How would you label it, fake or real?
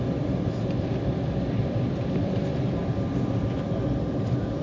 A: fake